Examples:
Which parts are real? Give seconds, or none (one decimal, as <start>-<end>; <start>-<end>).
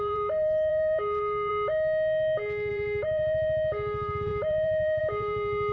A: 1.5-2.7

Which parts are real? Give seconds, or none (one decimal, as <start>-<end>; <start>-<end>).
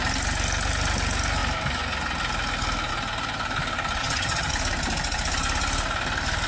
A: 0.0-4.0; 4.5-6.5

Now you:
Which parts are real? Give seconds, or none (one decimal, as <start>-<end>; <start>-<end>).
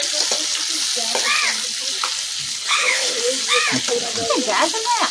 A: 0.0-2.5; 3.2-5.1